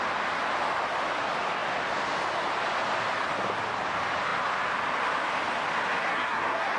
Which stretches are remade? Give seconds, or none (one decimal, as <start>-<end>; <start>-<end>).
6.0-6.8